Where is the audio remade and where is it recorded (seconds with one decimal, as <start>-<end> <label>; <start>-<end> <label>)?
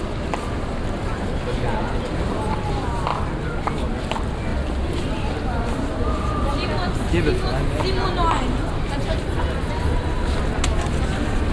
0.0-11.5 recorded